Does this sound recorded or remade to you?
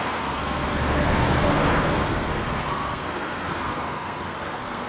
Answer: remade